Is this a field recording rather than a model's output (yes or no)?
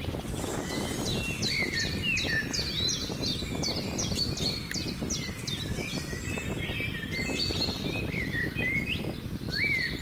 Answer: no